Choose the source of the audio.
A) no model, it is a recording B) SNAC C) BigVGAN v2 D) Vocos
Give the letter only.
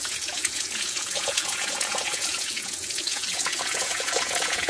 D